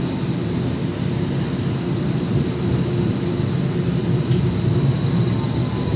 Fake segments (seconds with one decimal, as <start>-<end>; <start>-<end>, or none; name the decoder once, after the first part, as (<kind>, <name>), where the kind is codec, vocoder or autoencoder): none